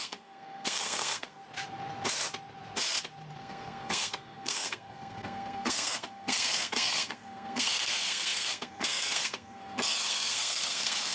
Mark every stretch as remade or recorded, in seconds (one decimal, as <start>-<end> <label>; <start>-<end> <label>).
0.0-1.4 remade; 1.4-3.4 recorded; 3.4-11.1 remade